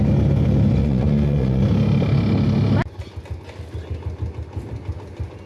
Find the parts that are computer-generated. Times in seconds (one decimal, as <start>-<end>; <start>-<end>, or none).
0.8-1.6